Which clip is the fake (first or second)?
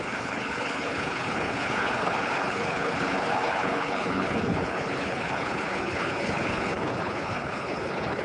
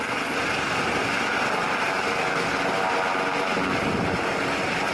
first